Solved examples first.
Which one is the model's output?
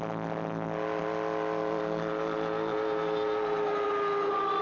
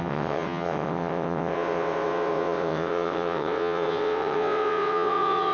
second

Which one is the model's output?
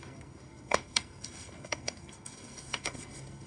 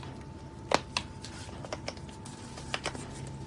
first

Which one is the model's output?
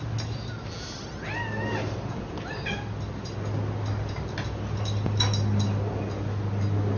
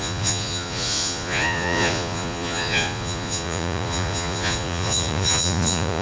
second